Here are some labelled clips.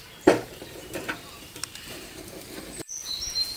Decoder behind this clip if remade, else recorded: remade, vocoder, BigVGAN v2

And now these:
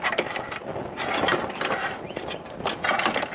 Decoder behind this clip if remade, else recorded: recorded